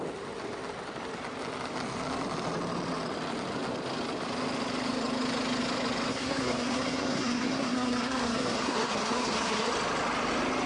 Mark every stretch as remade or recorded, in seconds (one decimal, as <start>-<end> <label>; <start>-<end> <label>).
0.0-6.1 recorded; 6.1-9.7 remade; 9.7-10.7 recorded